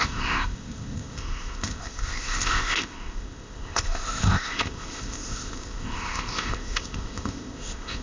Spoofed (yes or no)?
yes